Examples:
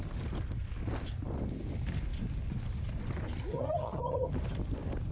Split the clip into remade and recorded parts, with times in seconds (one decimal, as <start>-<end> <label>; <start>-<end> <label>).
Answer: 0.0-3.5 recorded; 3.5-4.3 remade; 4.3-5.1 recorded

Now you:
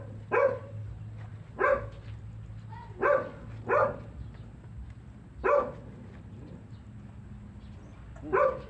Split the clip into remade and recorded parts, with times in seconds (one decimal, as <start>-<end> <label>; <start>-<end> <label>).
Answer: 0.0-0.6 recorded; 0.6-1.3 remade; 1.3-8.7 recorded

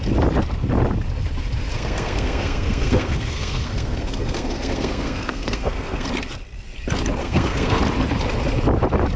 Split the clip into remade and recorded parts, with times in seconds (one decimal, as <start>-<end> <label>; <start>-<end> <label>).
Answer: 0.0-1.7 recorded; 1.7-6.1 remade; 6.1-7.2 recorded; 7.2-7.8 remade; 7.8-9.2 recorded

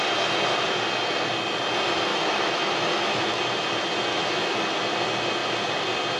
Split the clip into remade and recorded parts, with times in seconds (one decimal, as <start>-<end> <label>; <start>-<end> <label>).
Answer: 0.0-2.1 recorded; 2.1-3.4 remade; 3.4-4.1 recorded; 4.1-4.6 remade; 4.6-6.2 recorded